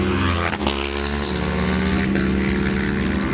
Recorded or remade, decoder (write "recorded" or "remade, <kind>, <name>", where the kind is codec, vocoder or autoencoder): recorded